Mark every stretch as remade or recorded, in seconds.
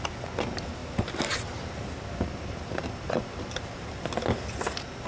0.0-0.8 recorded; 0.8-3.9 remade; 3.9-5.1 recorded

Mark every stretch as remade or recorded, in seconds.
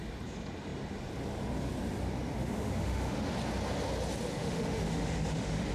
0.0-2.4 recorded; 2.4-3.3 remade; 3.3-4.3 recorded; 4.3-5.7 remade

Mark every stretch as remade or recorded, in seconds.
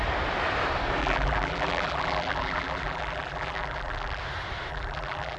0.0-1.0 recorded; 1.0-4.2 remade; 4.2-4.7 recorded; 4.7-5.4 remade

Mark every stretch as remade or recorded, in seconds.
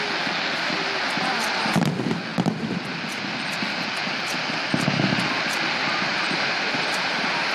0.0-6.1 recorded; 6.1-7.5 remade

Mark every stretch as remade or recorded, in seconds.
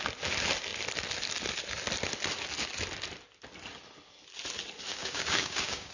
0.0-4.9 recorded; 4.9-5.9 remade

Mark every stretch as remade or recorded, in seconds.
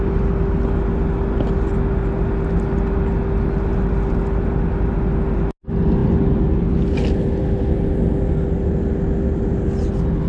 0.0-10.3 recorded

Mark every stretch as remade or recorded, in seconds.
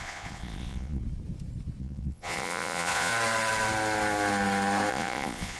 0.0-1.0 remade; 1.0-1.8 recorded; 1.8-3.1 remade; 3.1-4.9 recorded; 4.9-5.6 remade